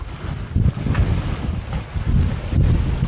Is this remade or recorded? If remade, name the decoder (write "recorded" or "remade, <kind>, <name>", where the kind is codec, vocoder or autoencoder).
recorded